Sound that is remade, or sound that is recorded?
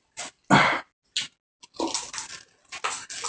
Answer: recorded